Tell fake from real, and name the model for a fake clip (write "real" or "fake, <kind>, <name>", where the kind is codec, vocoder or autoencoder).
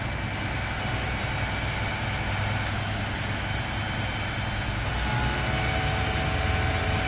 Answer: real